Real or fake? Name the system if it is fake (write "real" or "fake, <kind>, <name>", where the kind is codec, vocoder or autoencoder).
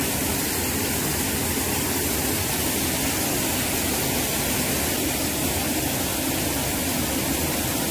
real